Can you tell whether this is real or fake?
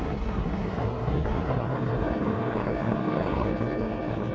fake